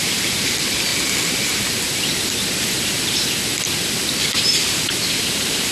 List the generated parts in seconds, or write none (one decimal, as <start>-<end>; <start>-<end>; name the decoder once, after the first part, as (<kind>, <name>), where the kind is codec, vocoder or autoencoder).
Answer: 0.0-0.9 (vocoder, BigVGAN v2); 4.3-5.7

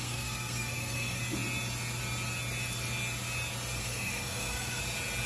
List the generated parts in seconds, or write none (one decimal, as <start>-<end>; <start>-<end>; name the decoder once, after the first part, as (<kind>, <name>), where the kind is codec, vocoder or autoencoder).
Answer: 0.0-1.2 (codec, SNAC); 3.8-4.8

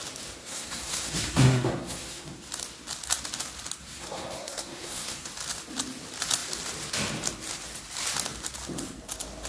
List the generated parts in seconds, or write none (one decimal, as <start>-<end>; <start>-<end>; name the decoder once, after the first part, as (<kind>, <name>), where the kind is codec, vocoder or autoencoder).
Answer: 0.4-2.5 (codec, SNAC); 3.8-5.3

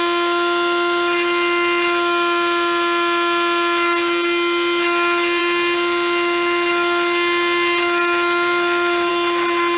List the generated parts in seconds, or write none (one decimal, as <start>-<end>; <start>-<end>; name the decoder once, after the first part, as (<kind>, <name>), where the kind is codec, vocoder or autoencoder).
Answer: none

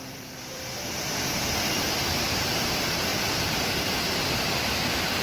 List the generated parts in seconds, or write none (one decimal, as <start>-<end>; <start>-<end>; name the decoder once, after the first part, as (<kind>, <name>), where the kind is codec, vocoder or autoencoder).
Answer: 0.0-5.2 (vocoder, BigVGAN v2)

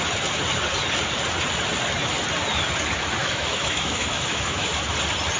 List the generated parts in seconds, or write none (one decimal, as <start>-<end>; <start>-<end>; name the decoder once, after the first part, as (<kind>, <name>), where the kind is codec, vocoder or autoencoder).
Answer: 3.2-4.7 (autoencoder, DAC-VAE)

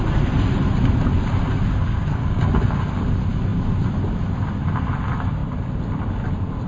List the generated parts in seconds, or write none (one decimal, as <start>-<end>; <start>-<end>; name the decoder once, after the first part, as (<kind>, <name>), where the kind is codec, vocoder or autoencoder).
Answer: 1.8-2.4 (codec, DAC)

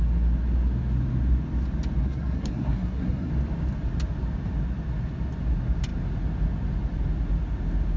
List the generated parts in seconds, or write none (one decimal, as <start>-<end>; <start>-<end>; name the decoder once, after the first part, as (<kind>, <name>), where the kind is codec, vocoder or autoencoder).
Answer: 2.0-3.3 (codec, SNAC)